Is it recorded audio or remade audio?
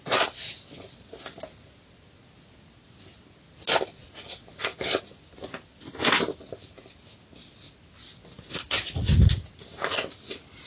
recorded